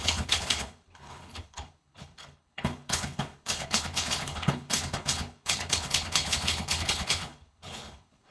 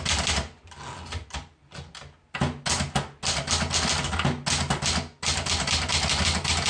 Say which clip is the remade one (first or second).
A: first